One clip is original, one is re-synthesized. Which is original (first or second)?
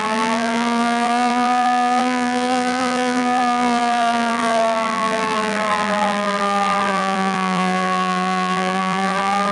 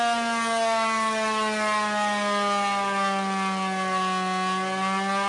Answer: second